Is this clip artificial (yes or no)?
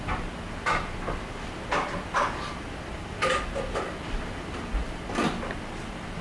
yes